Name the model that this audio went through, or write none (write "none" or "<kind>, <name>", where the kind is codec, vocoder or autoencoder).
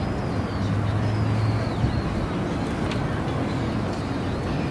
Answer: none